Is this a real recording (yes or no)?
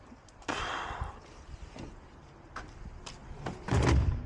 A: yes